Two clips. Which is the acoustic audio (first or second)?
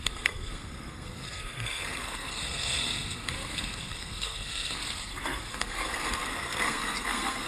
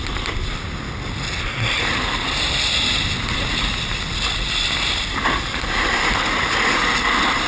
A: second